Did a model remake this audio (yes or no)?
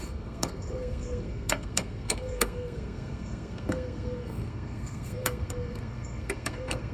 yes